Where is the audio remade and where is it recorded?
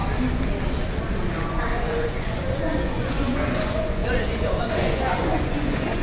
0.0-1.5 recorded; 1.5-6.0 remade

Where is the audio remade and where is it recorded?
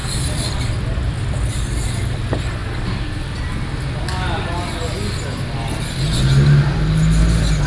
0.0-2.6 remade; 2.6-7.2 recorded; 7.2-7.7 remade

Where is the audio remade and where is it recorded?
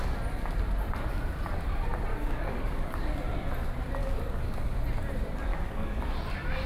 0.0-2.1 recorded; 2.1-3.1 remade; 3.1-4.0 recorded; 4.0-4.8 remade; 4.8-5.5 recorded; 5.5-6.1 remade; 6.1-6.7 recorded